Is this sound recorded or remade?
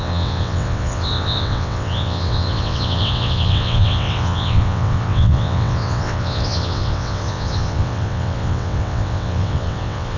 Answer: remade